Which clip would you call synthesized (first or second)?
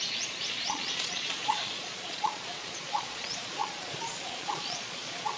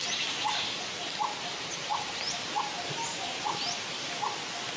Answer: first